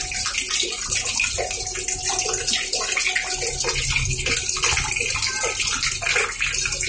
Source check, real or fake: real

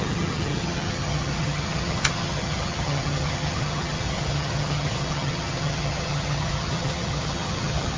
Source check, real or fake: fake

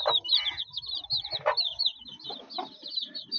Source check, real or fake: real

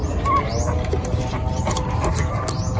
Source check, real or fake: real